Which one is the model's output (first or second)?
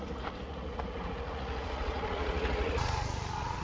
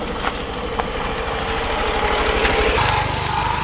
first